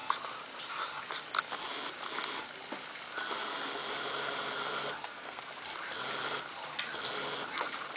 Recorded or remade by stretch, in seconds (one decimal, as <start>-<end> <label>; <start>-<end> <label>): 0.0-4.8 recorded; 4.8-5.4 remade; 5.4-8.0 recorded